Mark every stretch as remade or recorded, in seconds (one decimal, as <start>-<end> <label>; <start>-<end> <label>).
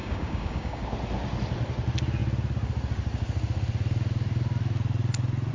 0.0-0.8 remade; 0.8-5.5 recorded